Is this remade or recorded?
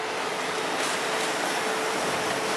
recorded